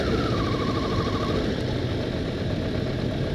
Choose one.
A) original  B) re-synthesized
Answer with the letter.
A